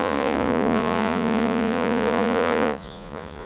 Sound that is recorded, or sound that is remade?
remade